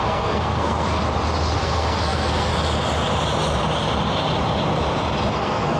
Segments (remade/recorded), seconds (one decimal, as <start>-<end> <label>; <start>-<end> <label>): 0.0-1.0 remade; 1.0-1.6 recorded; 1.6-2.5 remade; 2.5-5.3 recorded; 5.3-5.8 remade